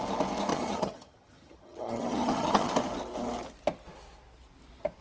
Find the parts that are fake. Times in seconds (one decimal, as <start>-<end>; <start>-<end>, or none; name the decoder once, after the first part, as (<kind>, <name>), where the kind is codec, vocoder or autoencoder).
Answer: 0.5-2.7 (vocoder, HiFi-GAN)